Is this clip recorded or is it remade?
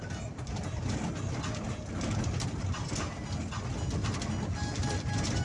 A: recorded